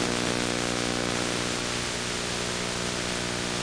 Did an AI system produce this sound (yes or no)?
no